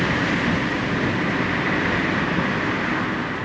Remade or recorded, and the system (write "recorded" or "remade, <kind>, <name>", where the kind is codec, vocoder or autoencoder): recorded